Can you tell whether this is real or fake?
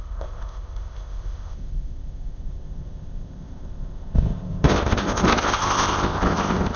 fake